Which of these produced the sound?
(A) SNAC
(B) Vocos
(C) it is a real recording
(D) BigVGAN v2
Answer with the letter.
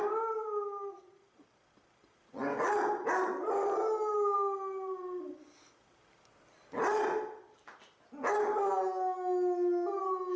C